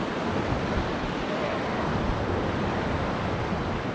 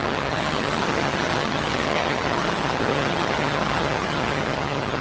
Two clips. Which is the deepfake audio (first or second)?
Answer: second